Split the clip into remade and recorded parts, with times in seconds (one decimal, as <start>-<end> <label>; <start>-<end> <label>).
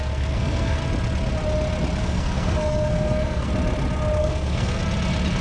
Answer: 0.0-0.8 remade; 0.8-2.0 recorded; 2.0-3.5 remade; 3.5-4.2 recorded; 4.2-4.8 remade; 4.8-5.4 recorded